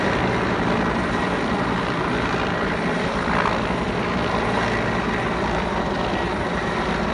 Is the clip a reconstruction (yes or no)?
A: no